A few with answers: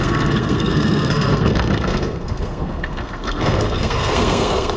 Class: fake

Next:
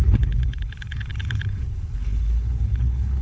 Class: fake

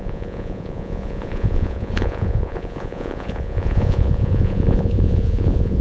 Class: fake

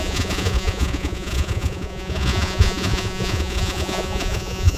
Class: fake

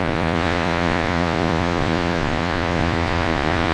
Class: fake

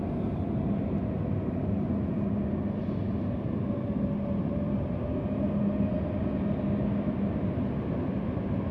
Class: real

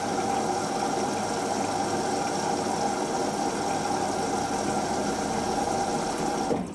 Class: real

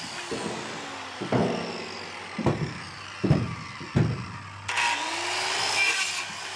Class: real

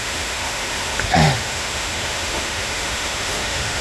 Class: fake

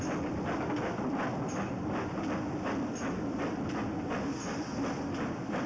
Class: real